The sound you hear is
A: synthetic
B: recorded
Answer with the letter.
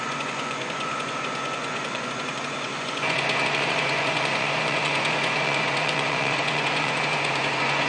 A